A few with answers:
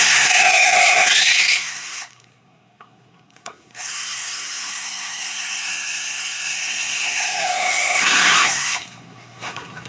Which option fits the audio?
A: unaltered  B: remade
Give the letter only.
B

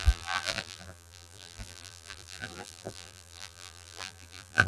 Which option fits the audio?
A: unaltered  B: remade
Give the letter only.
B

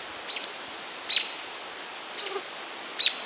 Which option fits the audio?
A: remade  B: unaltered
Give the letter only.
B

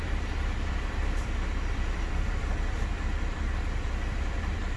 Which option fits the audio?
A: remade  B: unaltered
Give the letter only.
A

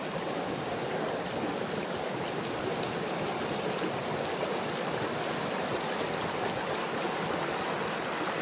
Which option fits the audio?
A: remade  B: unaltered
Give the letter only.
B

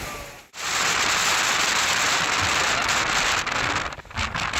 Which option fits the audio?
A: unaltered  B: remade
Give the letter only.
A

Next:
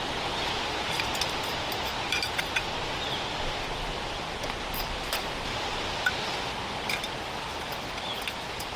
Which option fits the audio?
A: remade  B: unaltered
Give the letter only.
B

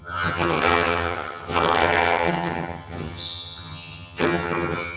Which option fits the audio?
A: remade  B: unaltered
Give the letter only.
A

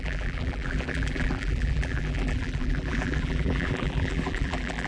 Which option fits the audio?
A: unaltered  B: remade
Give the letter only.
B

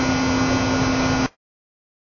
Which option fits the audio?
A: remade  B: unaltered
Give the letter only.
B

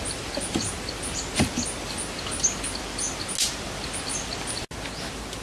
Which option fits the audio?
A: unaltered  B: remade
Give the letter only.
A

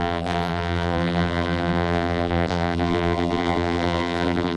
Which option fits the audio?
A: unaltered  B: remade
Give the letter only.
B